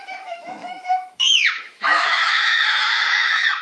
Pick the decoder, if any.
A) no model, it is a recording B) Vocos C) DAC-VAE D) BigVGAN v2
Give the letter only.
C